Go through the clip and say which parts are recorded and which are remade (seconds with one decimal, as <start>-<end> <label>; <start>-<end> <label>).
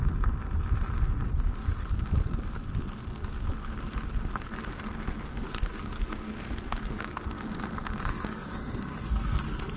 0.0-5.3 recorded; 5.3-7.4 remade; 7.4-8.1 recorded; 8.1-9.8 remade